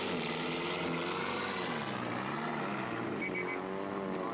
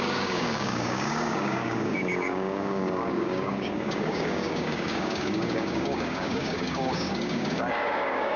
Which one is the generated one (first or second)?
second